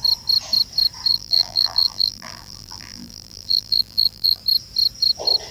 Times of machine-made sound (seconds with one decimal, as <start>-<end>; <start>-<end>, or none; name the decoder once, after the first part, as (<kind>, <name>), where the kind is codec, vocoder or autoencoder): 1.1-4.4 (vocoder, BigVGAN v2)